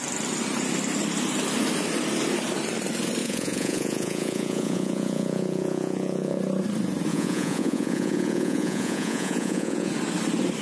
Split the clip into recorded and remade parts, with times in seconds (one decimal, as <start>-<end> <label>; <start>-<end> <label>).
0.0-3.2 recorded; 3.2-6.4 remade; 6.4-7.1 recorded; 7.1-9.9 remade; 9.9-10.6 recorded